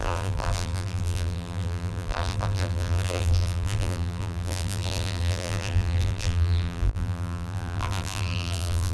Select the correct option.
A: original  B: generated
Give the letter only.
B